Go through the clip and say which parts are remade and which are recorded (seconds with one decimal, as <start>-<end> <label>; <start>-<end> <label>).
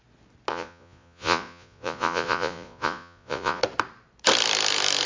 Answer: 0.0-0.5 recorded; 0.5-3.6 remade; 3.6-5.1 recorded